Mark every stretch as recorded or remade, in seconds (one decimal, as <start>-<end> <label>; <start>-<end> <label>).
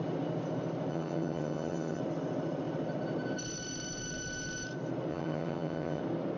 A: 0.0-0.9 recorded; 0.9-2.0 remade; 2.0-5.1 recorded; 5.1-6.0 remade; 6.0-6.4 recorded